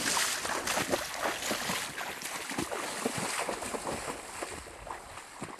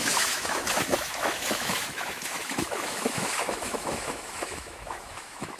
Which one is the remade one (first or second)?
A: second